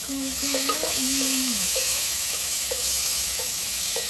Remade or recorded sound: remade